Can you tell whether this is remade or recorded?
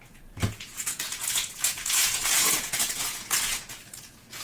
remade